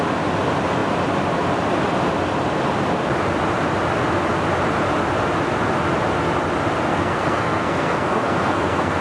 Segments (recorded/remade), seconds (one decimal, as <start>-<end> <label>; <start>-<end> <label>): 0.0-6.9 recorded; 6.9-9.0 remade